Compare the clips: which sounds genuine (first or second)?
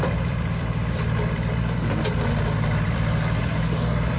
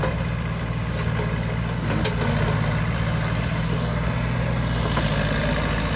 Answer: second